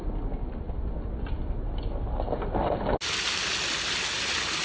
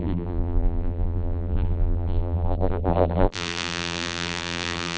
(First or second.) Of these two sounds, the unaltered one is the first